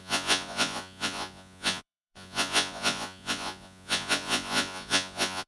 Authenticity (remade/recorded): remade